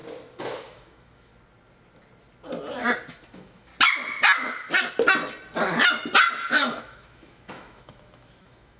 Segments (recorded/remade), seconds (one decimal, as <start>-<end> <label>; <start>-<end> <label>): 0.0-0.6 recorded; 0.6-1.3 remade; 1.3-3.1 recorded; 3.1-3.7 remade; 3.7-6.5 recorded; 6.5-8.8 remade